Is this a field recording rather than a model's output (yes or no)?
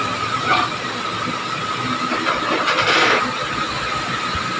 yes